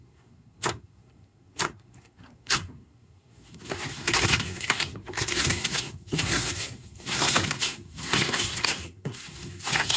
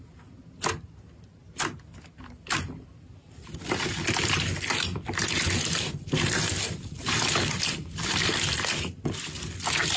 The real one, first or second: second